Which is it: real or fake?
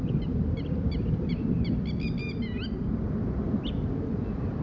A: fake